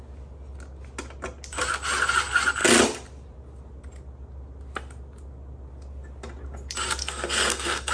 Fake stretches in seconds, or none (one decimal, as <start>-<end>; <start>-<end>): 7.0-7.9